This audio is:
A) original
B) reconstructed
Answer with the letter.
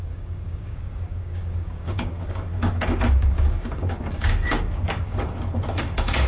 B